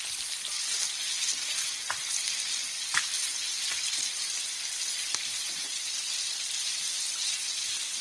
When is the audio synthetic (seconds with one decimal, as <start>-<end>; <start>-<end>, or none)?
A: none